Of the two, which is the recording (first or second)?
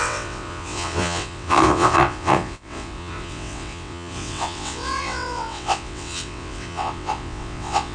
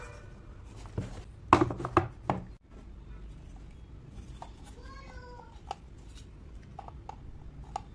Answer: second